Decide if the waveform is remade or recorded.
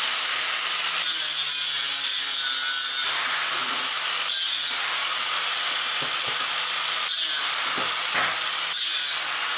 remade